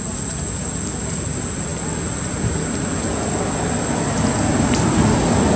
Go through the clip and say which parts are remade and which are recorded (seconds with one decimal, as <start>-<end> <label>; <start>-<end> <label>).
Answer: 0.0-5.6 recorded